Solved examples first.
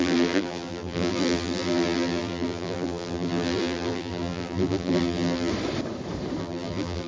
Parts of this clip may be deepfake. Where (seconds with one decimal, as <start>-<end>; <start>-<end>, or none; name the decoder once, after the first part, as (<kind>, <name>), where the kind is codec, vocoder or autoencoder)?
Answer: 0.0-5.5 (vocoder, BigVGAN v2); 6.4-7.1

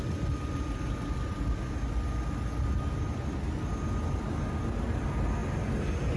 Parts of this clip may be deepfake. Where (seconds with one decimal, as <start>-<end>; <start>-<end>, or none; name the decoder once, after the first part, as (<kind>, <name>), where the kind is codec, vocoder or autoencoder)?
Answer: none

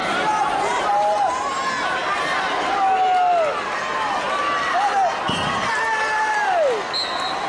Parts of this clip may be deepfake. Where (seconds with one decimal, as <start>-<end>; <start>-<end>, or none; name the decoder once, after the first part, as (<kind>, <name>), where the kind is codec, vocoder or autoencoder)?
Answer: 0.0-0.9 (vocoder, BigVGAN v2)

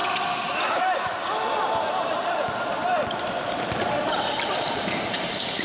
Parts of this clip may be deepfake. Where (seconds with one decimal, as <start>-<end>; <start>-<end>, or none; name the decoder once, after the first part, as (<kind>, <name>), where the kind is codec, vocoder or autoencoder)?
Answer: 3.4-5.6 (vocoder, BigVGAN v2)

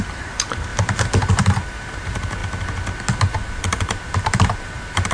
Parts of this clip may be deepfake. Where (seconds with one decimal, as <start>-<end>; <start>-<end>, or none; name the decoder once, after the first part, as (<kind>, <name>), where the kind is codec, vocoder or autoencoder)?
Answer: 0.0-2.4 (vocoder, BigVGAN v2); 3.2-5.1

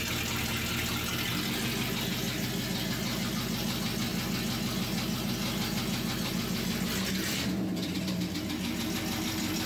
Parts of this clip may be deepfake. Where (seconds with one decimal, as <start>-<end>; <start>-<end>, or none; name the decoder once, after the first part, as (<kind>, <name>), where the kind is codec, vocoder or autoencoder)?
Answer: none

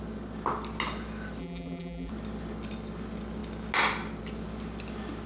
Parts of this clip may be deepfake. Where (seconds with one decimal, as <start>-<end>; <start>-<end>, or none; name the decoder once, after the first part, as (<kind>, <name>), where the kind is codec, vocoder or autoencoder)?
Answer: 1.4-2.1 (vocoder, BigVGAN v2)

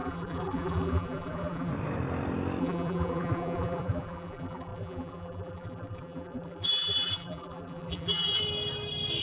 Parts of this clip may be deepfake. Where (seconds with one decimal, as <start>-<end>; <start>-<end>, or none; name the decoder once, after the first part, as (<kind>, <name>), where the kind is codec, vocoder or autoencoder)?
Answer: 0.0-1.7 (vocoder, BigVGAN v2); 2.6-8.4